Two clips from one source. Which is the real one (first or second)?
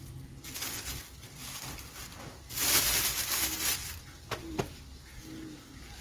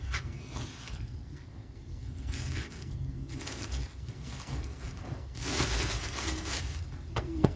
first